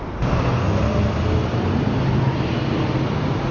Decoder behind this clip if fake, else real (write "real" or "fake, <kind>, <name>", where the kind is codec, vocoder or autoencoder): real